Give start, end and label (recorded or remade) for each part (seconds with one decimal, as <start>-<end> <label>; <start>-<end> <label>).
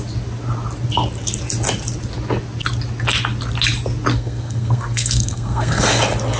0.0-4.1 recorded; 4.1-6.0 remade; 6.0-6.4 recorded